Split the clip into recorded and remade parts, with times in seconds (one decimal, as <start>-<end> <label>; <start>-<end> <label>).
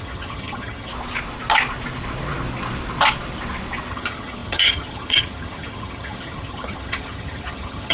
0.0-0.9 remade; 0.9-3.9 recorded; 3.9-7.9 remade